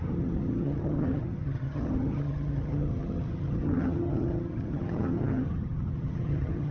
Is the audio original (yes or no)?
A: no